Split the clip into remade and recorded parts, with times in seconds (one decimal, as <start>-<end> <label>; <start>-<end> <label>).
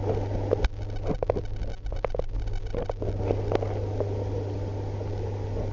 0.0-5.7 recorded